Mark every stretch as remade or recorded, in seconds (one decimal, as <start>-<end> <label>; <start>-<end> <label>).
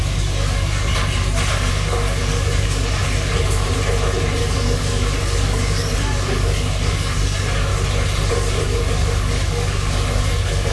0.0-0.9 remade; 0.9-1.7 recorded; 1.7-3.0 remade; 3.0-4.4 recorded; 4.4-7.7 remade; 7.7-8.3 recorded; 8.3-10.7 remade